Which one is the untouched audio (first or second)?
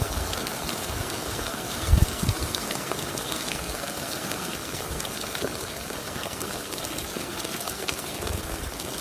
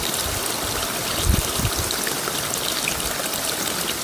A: second